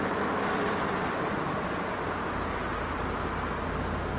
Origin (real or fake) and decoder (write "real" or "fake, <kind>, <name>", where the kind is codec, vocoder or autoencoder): real